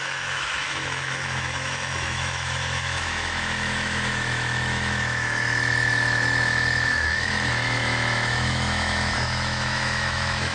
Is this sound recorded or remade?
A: remade